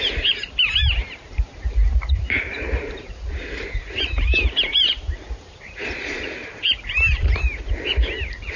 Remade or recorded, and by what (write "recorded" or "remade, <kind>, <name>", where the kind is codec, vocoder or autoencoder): remade, vocoder, BigVGAN v2